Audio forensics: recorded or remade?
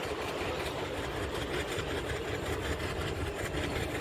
recorded